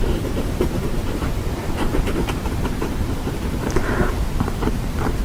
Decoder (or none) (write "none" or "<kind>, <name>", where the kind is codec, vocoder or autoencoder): vocoder, BigVGAN v2